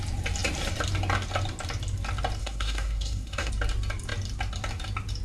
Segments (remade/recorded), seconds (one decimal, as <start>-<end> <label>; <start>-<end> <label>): 0.0-2.4 recorded; 2.4-3.5 remade; 3.5-5.2 recorded